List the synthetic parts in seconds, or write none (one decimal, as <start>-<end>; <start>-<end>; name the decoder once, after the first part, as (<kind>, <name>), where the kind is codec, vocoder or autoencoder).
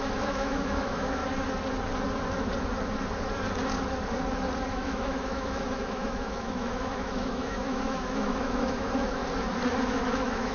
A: 0.0-1.2 (autoencoder, DAC-VAE); 4.7-9.2; 9.8-10.5